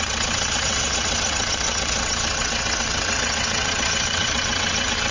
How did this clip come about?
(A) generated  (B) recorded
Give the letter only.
A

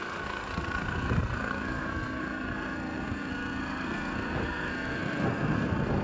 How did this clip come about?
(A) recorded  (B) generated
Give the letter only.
B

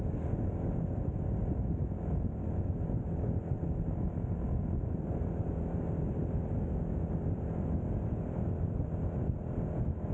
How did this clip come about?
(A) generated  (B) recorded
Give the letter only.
B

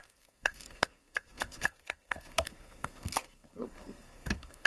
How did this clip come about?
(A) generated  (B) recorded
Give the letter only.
A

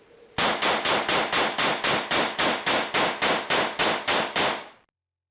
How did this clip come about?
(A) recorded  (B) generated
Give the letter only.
A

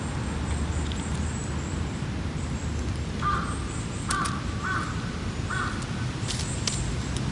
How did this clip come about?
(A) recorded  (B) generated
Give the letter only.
A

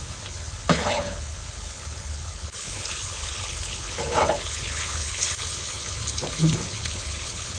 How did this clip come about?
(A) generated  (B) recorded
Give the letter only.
A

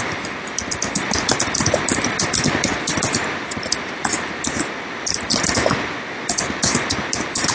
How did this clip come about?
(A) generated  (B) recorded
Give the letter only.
B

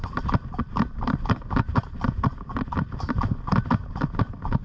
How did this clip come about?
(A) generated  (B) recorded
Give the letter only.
A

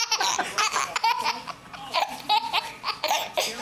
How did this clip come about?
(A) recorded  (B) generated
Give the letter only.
B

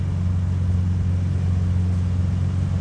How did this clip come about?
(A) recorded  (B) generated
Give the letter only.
A